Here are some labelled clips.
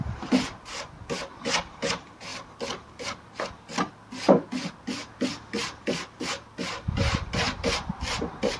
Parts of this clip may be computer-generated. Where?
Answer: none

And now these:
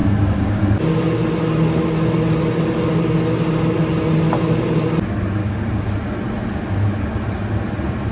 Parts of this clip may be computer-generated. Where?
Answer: 0.0-0.6 (codec, DAC); 5.4-5.9